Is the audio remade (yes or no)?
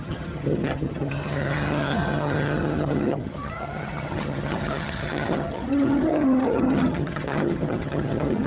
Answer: yes